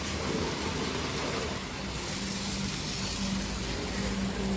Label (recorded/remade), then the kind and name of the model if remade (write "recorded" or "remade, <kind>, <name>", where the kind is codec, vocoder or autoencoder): recorded